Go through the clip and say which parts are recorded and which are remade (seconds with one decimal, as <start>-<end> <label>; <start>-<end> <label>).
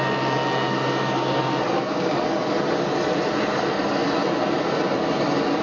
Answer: 0.0-5.6 recorded